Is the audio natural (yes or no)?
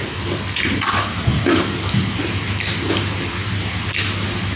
yes